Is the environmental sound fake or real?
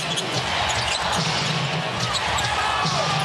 fake